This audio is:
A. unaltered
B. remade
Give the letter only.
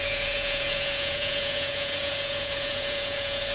B